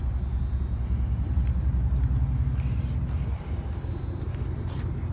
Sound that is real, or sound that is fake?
real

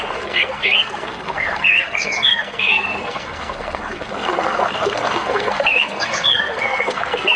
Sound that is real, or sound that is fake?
fake